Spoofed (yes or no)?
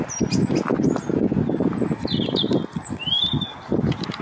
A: no